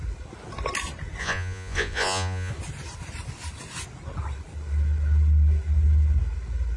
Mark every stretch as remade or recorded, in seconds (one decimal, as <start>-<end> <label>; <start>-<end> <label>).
0.0-1.2 recorded; 1.2-2.5 remade; 2.5-6.8 recorded